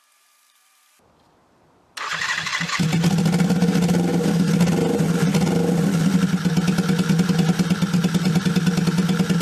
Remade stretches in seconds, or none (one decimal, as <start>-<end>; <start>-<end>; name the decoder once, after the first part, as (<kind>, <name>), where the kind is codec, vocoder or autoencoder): none